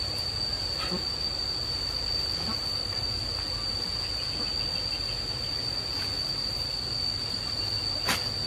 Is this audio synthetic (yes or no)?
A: no